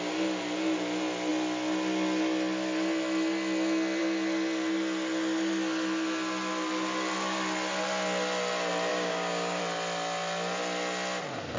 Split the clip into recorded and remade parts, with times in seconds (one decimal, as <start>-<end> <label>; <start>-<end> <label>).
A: 0.0-8.9 recorded; 8.9-9.6 remade; 9.6-11.6 recorded